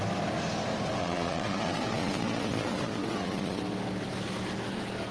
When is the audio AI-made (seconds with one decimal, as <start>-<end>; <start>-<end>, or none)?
1.0-3.6